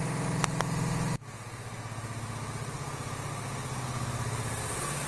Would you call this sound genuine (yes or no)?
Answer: yes